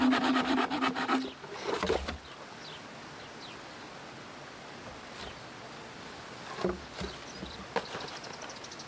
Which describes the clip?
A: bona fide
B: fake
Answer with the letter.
A